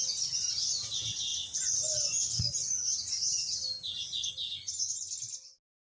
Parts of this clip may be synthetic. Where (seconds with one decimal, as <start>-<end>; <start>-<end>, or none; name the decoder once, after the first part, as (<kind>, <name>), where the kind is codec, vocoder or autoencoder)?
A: none